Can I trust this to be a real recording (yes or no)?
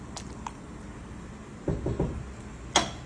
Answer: yes